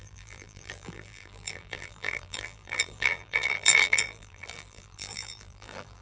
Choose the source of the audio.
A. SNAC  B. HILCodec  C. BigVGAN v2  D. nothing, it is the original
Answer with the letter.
C